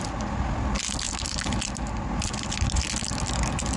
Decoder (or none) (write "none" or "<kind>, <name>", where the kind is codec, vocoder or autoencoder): none